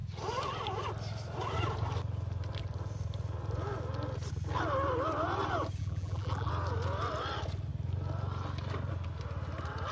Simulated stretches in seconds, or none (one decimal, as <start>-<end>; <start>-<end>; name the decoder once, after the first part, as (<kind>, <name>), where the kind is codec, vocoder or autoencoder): 5.8-6.5 (vocoder, BigVGAN v2)